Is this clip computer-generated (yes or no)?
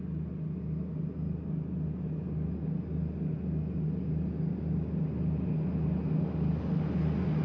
no